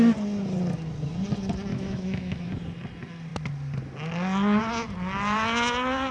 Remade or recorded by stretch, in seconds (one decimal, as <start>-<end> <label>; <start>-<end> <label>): 0.0-1.7 recorded; 1.7-2.5 remade; 2.5-6.1 recorded